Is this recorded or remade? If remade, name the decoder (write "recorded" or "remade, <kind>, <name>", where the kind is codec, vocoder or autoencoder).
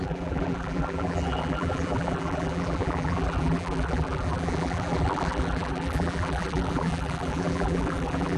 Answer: remade, vocoder, BigVGAN v2